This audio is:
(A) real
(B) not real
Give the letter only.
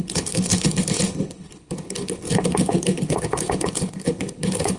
B